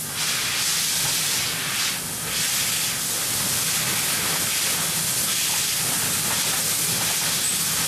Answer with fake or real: real